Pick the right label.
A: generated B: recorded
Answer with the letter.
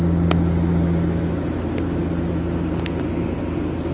B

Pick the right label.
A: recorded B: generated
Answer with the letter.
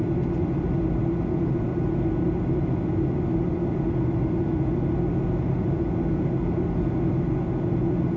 A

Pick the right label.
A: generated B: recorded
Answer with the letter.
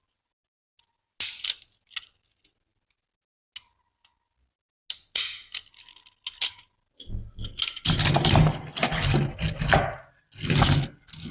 B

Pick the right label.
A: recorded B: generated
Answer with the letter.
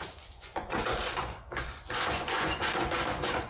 B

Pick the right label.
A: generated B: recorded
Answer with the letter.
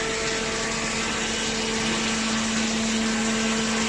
B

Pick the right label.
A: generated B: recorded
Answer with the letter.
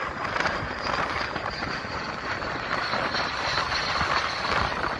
B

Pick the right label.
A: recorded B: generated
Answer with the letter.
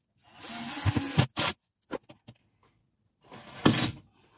A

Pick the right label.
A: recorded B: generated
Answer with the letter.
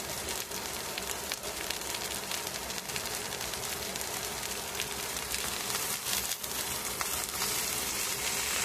B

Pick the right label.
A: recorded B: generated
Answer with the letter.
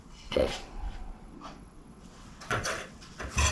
B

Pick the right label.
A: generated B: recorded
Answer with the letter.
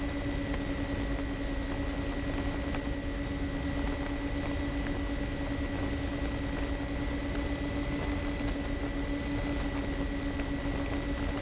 B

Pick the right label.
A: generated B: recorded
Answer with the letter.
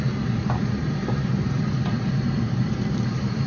A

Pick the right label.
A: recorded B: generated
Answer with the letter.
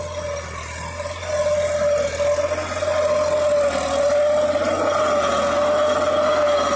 A